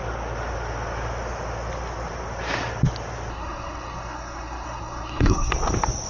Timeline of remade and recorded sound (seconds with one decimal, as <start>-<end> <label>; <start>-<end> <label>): 0.0-3.3 recorded; 3.3-5.5 remade; 5.5-6.1 recorded